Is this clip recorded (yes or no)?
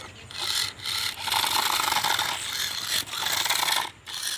yes